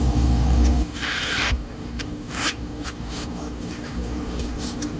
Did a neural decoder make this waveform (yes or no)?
yes